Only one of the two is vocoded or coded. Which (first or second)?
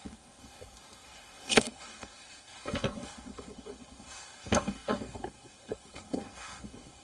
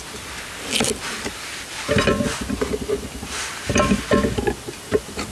first